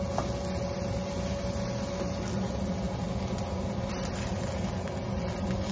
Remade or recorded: recorded